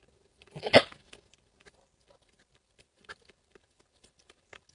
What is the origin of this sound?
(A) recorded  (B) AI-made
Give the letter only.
A